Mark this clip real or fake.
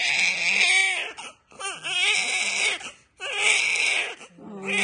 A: real